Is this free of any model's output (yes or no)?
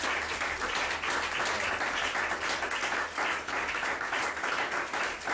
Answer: yes